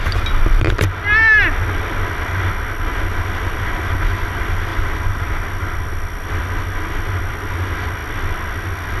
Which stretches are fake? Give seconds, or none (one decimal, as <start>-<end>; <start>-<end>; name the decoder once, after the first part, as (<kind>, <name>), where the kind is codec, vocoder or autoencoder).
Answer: none